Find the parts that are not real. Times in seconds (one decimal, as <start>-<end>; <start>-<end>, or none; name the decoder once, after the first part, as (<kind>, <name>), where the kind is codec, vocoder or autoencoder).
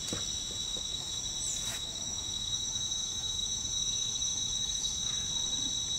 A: 0.6-1.2 (autoencoder, DAC-VAE); 1.7-5.3